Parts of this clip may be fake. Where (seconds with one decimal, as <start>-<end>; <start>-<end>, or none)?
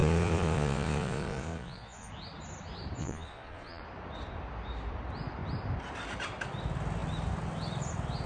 0.0-2.1; 3.0-3.8